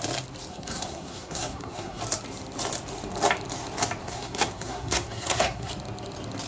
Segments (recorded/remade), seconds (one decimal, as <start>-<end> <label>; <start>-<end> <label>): 0.0-0.5 recorded; 0.5-2.0 remade; 2.0-4.0 recorded; 4.0-5.7 remade; 5.7-6.5 recorded